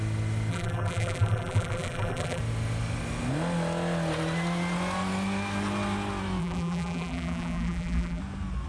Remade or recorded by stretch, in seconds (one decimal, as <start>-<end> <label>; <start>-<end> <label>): 0.0-0.5 recorded; 0.5-2.4 remade; 2.4-6.4 recorded; 6.4-8.2 remade; 8.2-8.7 recorded